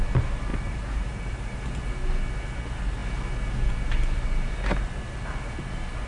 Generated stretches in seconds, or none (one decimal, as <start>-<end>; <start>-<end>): 0.5-1.8